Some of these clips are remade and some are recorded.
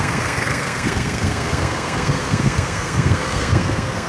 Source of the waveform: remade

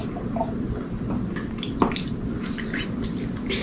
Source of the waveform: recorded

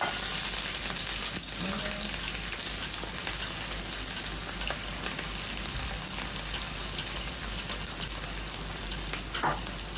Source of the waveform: recorded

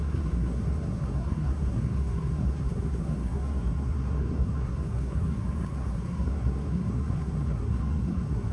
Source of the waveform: remade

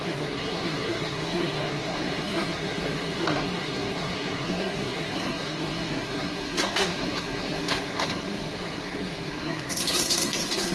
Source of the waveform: remade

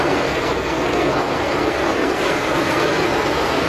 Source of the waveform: remade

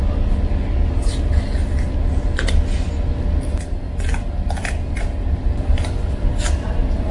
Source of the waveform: recorded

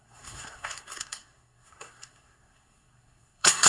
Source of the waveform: remade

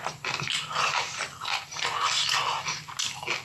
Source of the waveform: recorded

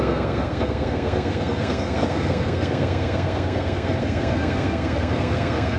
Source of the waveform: remade